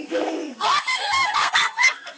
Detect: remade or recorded remade